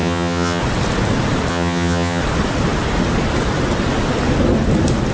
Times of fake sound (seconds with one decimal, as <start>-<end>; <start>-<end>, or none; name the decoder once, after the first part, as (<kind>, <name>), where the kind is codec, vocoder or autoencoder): 0.0-0.6 (vocoder, HiFi-GAN); 1.5-2.2